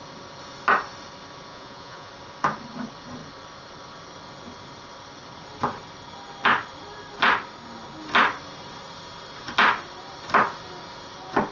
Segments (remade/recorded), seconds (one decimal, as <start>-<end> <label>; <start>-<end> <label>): 0.0-1.5 recorded; 1.5-2.1 remade; 2.1-11.5 recorded